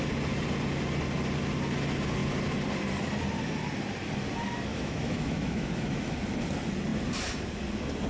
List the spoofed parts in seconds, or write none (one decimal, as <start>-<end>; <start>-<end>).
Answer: 4.7-6.1